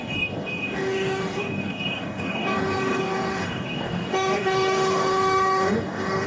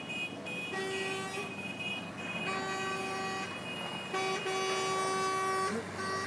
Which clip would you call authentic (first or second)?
second